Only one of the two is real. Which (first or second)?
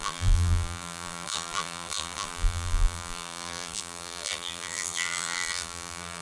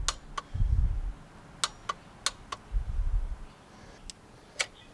second